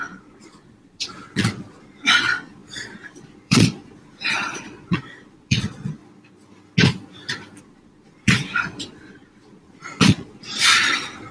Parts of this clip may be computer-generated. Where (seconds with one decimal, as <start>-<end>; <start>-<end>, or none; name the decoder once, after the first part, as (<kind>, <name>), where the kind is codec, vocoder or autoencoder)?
0.0-6.0 (vocoder, Vocos); 7.6-11.3